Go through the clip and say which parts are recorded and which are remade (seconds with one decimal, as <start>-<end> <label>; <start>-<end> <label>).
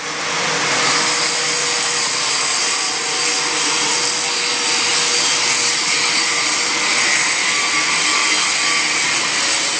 0.0-1.6 recorded; 1.6-2.2 remade; 2.2-4.9 recorded; 4.9-6.5 remade; 6.5-9.8 recorded